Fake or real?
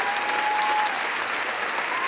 real